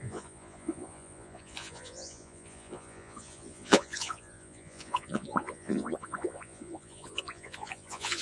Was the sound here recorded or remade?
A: remade